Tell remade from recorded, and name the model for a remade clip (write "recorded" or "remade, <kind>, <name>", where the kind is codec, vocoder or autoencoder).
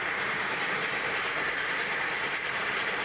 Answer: remade, vocoder, BigVGAN v2